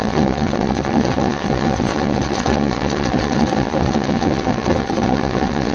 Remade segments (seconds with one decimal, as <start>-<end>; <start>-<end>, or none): 0.0-5.7